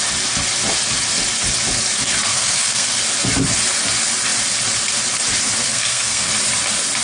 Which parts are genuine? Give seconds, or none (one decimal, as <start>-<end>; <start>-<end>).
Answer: 0.0-2.3; 3.0-5.6; 6.3-7.0